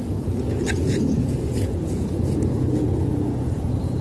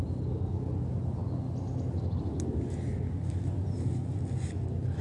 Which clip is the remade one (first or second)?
first